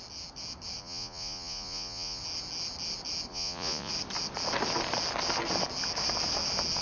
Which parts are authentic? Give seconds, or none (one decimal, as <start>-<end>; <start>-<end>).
0.0-0.8; 2.2-3.3; 3.9-6.8